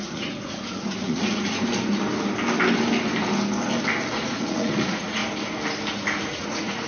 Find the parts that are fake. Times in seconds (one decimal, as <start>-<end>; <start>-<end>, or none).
0.0-1.7; 4.1-5.2; 6.2-6.9